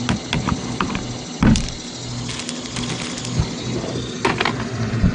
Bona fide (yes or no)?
yes